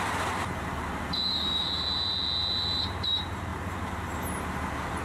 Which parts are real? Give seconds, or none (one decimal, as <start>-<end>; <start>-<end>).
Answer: none